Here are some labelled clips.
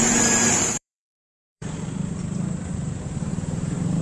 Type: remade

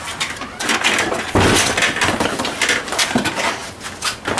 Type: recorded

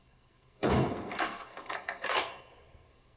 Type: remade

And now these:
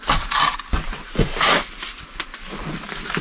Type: recorded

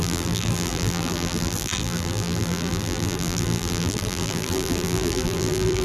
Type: remade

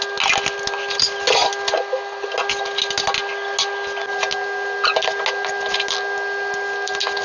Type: recorded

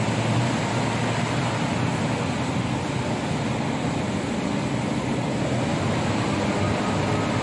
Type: recorded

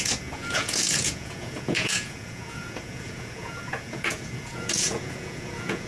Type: remade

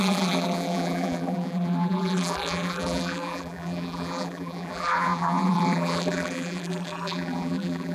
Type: remade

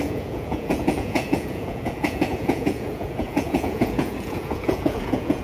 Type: remade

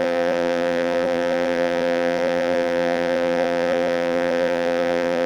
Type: remade